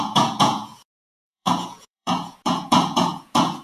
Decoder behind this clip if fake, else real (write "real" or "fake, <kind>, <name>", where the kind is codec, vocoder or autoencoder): fake, vocoder, Vocos